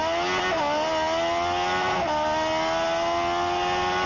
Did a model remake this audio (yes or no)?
no